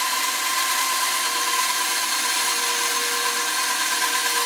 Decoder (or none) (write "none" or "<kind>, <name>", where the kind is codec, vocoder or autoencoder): none